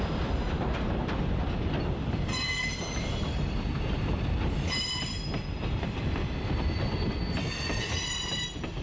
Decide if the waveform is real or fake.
fake